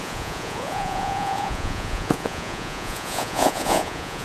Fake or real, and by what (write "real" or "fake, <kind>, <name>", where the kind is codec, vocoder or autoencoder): fake, vocoder, Vocos